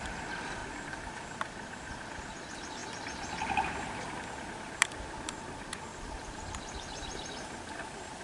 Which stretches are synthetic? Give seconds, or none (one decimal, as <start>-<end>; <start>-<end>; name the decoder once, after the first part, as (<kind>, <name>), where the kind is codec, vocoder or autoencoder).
0.6-2.2 (vocoder, BigVGAN v2); 5.9-7.3